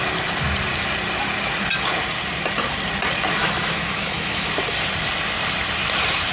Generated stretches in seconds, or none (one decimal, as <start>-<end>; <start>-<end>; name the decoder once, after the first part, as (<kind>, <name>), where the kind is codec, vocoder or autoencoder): 3.4-4.5 (autoencoder, DAC-VAE)